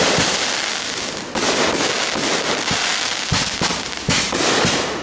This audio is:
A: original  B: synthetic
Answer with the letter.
A